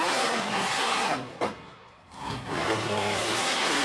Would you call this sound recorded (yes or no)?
no